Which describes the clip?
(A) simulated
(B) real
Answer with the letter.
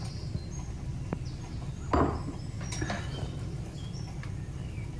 B